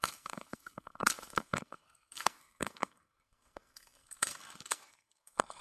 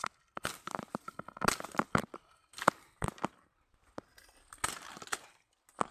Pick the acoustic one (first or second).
second